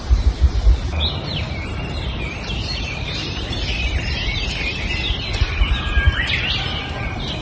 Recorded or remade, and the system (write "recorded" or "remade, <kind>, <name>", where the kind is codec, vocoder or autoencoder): remade, vocoder, BigVGAN v2